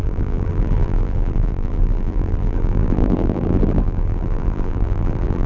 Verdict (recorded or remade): remade